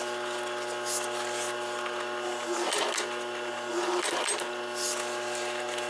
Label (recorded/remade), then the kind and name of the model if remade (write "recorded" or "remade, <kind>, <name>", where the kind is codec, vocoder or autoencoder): recorded